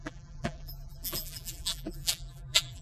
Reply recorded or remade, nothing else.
remade